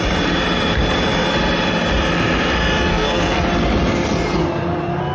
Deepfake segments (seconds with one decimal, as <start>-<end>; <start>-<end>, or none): 2.9-3.4